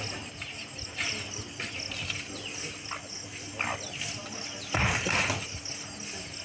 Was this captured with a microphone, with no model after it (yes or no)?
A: yes